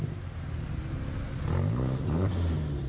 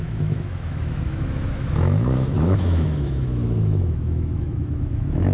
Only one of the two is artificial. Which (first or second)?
second